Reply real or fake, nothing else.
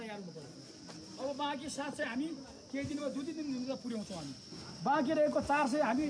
real